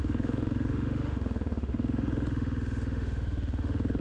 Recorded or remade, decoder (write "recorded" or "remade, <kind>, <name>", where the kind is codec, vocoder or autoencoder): remade, autoencoder, DAC-VAE